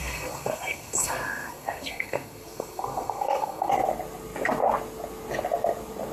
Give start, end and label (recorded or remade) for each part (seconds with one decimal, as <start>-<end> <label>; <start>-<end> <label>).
0.0-3.7 remade; 3.7-6.1 recorded